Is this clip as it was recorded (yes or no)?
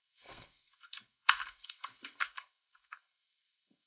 no